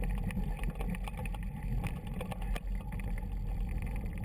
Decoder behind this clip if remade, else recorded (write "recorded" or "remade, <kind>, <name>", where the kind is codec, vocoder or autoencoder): recorded